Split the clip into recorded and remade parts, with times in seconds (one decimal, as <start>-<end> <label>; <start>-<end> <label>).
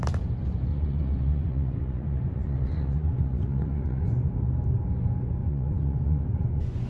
0.0-0.7 recorded; 0.7-4.3 remade; 4.3-5.4 recorded; 5.4-6.9 remade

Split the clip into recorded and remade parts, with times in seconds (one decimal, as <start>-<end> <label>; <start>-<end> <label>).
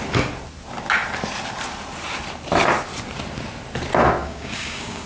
0.0-4.2 recorded; 4.2-5.1 remade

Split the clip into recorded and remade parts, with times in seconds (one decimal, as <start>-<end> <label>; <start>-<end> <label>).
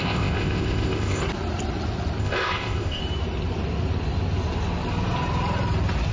0.0-1.2 remade; 1.2-2.2 recorded; 2.2-3.0 remade; 3.0-6.1 recorded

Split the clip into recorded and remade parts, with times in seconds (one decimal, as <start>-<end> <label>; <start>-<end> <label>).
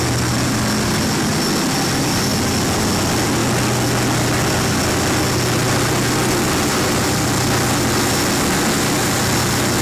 0.0-9.8 recorded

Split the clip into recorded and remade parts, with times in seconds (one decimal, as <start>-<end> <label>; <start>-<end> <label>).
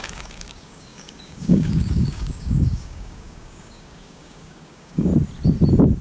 0.0-5.1 remade; 5.1-6.0 recorded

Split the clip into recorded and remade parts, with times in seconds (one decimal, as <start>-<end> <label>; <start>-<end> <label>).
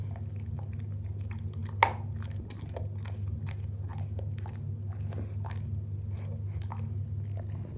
0.0-7.8 recorded